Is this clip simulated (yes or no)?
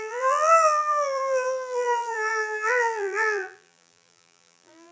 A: yes